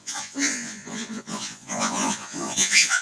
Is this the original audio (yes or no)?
no